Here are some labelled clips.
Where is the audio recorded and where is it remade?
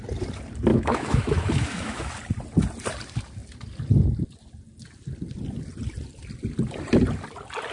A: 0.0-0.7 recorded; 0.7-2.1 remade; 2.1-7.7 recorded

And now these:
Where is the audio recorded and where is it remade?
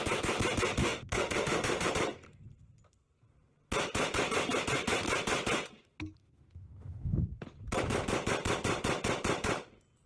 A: 0.0-0.8 recorded; 0.8-1.9 remade; 1.9-6.2 recorded; 6.2-7.2 remade; 7.2-10.1 recorded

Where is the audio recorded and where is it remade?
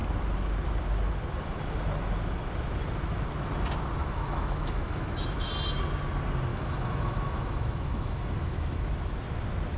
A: 0.0-4.0 recorded; 4.0-5.5 remade; 5.5-6.5 recorded; 6.5-8.9 remade; 8.9-9.8 recorded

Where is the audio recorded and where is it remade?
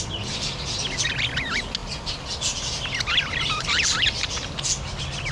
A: 0.0-5.3 recorded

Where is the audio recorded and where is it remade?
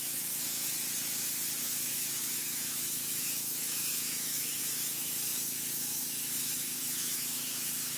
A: 0.0-0.7 remade; 0.7-1.6 recorded; 1.6-8.0 remade